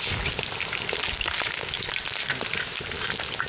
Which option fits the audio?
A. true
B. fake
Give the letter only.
A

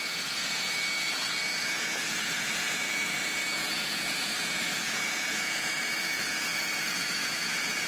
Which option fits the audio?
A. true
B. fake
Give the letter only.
B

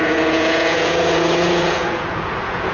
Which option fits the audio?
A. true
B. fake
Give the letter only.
B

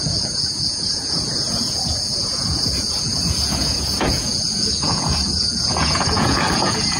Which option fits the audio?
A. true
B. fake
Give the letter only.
B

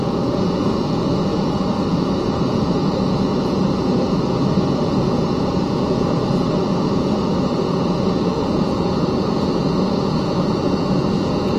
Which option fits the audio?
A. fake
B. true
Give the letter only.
A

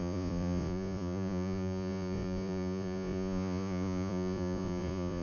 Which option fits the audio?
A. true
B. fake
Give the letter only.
B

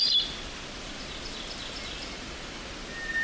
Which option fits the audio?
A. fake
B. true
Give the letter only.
B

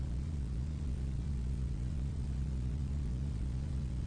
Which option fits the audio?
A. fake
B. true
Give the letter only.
A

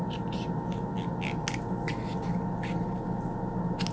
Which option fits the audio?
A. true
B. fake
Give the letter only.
A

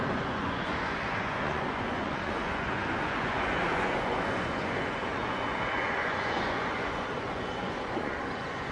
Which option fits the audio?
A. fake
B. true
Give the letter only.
A